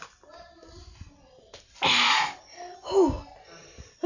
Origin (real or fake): real